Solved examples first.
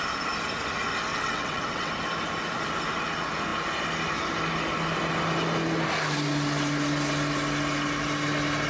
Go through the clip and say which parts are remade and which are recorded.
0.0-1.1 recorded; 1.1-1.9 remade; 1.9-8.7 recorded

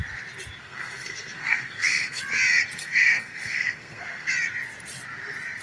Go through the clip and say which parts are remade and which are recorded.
0.0-0.6 recorded; 0.6-2.2 remade; 2.2-2.8 recorded; 2.8-4.3 remade; 4.3-5.6 recorded